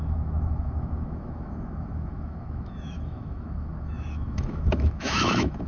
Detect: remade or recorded remade